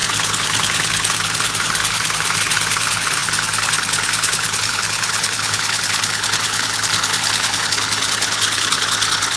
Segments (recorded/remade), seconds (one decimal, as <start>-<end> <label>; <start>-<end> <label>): 0.0-9.4 remade

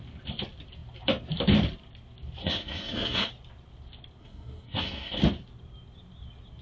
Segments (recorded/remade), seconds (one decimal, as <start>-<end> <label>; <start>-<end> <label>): 0.0-2.4 recorded; 2.4-3.3 remade; 3.3-4.2 recorded; 4.2-5.2 remade; 5.2-6.6 recorded